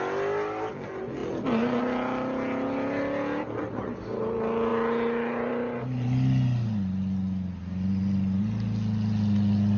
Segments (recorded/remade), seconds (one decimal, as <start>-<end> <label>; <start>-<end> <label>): 0.0-9.8 recorded